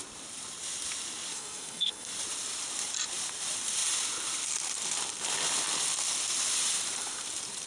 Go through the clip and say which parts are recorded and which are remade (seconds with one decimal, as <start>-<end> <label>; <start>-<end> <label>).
0.0-1.3 recorded; 1.3-2.1 remade; 2.1-7.7 recorded